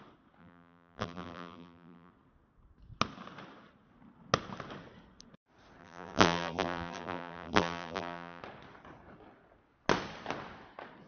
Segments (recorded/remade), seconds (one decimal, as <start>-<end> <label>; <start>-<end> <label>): 0.0-0.4 recorded; 0.4-2.1 remade; 2.1-5.8 recorded; 5.8-8.4 remade; 8.4-11.1 recorded